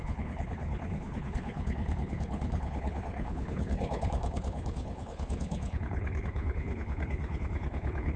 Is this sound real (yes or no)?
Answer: no